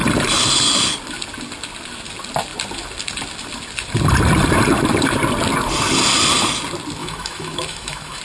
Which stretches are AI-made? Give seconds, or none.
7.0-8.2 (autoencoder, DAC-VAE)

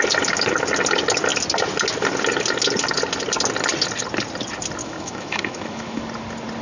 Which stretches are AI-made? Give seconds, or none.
4.8-6.0 (autoencoder, DAC-VAE)

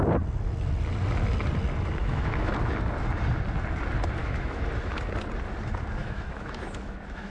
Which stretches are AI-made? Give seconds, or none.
2.0-2.5 (autoencoder, DAC-VAE); 4.2-4.7; 6.0-7.3

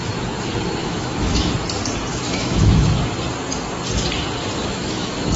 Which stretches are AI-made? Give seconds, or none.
0.8-1.5 (autoencoder, DAC-VAE); 2.1-3.0; 4.6-5.4

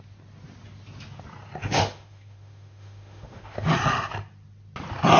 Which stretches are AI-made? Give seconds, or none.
1.6-3.7 (autoencoder, DAC-VAE)

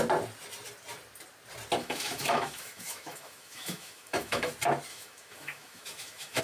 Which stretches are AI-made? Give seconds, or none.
1.8-4.5 (autoencoder, DAC-VAE); 4.9-6.4

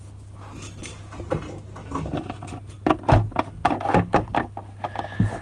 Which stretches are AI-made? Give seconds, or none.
1.8-2.5 (autoencoder, DAC-VAE)